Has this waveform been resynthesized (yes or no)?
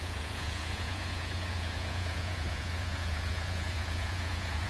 yes